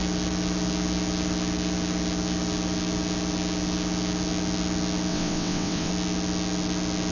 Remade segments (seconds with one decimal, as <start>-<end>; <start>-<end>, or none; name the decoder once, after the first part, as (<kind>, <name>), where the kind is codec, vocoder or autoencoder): 5.1-5.9 (vocoder, WaveNeXt)